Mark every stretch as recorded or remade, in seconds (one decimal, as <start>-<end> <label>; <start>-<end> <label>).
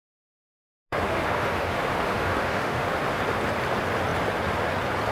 0.0-0.9 recorded; 0.9-3.2 remade; 3.2-5.1 recorded